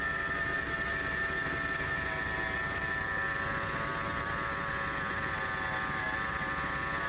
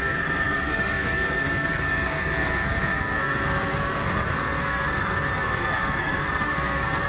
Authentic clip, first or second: first